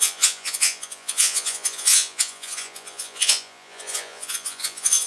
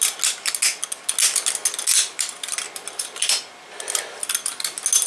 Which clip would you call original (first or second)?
second